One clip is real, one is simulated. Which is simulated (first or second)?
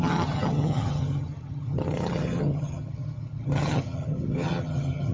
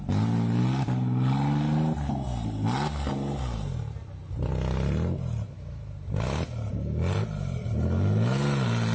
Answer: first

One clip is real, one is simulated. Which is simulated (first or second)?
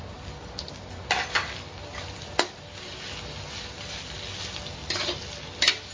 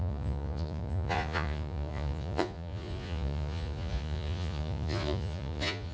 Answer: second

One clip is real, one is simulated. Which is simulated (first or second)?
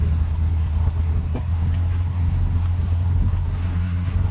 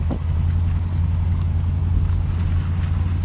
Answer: first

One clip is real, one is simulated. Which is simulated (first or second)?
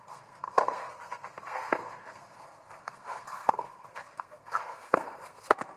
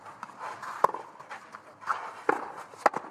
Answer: first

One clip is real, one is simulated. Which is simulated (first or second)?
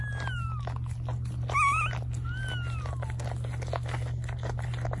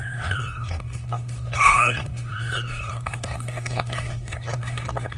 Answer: second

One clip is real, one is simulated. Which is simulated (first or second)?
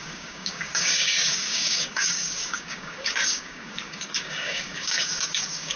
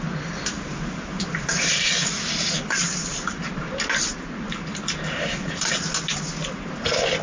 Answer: first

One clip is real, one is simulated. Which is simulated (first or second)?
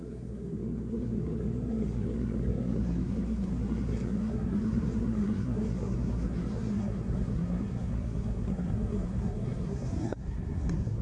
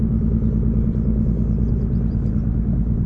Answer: first